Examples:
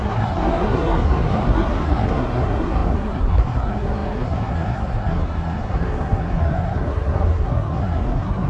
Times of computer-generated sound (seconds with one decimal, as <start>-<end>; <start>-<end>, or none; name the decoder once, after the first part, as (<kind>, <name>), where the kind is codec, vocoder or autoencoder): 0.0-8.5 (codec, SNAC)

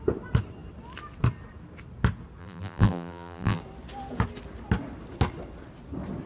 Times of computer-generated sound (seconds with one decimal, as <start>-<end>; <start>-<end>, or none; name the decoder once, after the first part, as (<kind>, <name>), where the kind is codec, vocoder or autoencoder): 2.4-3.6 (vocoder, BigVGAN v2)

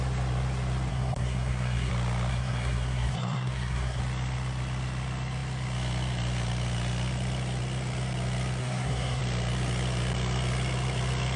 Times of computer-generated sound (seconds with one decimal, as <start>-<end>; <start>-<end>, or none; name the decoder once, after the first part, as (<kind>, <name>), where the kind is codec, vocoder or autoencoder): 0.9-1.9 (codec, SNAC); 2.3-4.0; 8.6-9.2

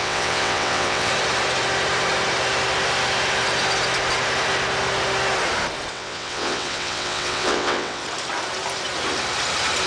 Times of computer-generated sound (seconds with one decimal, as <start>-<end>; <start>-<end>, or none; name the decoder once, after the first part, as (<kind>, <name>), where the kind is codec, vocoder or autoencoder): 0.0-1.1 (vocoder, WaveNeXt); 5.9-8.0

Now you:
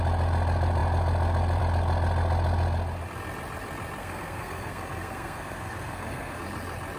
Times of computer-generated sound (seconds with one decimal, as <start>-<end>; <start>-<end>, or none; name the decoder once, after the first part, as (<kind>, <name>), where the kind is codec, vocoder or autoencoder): 4.0-6.4 (codec, SNAC)

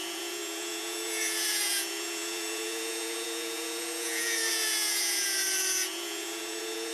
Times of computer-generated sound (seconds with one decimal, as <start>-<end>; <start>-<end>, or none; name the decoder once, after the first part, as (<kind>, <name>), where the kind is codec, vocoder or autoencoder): 0.0-6.9 (vocoder, Vocos)

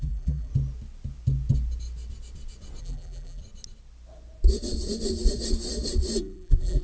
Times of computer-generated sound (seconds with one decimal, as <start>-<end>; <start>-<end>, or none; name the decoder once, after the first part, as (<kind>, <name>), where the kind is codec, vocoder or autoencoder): 0.0-0.5 (vocoder, BigVGAN v2); 2.8-3.4; 6.2-6.8

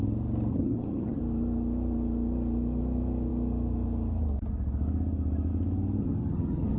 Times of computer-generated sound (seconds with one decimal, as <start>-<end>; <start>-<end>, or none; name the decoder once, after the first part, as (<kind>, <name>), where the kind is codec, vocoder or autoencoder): 0.5-1.2 (vocoder, HiFi-GAN); 6.0-6.8